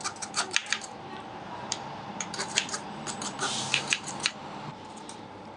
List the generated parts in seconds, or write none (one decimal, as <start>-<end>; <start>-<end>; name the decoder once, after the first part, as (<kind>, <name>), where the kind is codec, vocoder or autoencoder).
0.0-5.6 (vocoder, BigVGAN v2)